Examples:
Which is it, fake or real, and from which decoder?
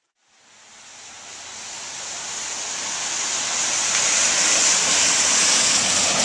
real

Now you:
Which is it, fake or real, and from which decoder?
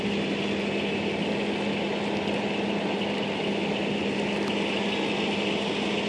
real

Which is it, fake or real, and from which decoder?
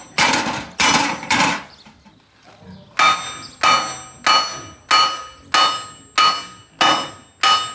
real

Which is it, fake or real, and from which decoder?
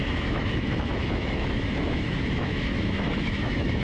fake, autoencoder, DAC-VAE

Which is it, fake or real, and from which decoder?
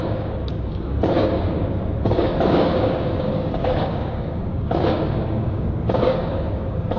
fake, codec, DAC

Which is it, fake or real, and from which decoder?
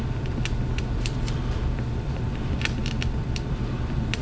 fake, vocoder, BigVGAN v2